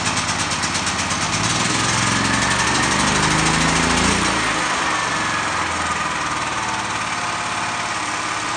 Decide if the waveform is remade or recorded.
recorded